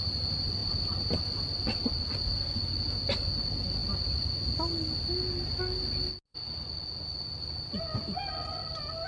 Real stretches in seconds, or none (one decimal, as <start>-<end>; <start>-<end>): 0.0-9.1